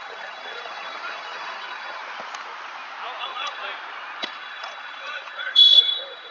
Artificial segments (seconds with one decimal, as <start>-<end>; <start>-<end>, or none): 0.0-2.0; 3.2-3.6; 4.2-6.3